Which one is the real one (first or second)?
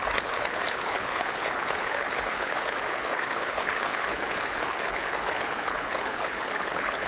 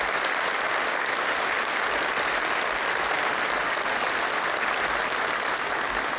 second